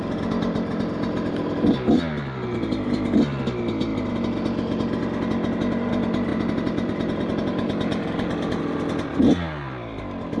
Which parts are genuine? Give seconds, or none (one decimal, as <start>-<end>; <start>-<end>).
0.0-6.3; 8.6-10.4